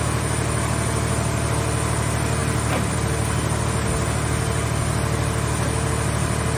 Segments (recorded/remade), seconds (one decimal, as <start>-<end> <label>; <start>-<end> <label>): 0.0-6.6 recorded